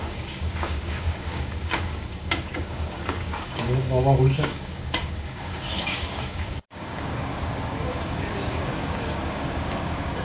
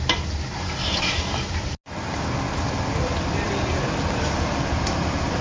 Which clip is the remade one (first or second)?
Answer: first